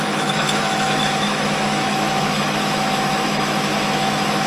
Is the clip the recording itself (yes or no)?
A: no